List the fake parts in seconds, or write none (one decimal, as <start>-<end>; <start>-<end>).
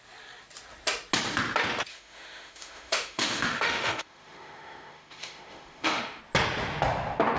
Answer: 1.9-6.2